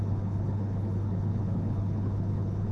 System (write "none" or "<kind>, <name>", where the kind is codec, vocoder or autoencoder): codec, HILCodec